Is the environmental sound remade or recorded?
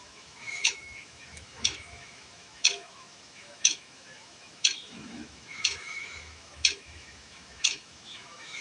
remade